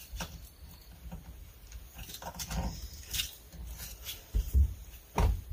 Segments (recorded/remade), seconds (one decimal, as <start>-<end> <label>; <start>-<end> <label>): 0.0-0.8 remade; 0.8-4.1 recorded; 4.1-4.8 remade; 4.8-5.5 recorded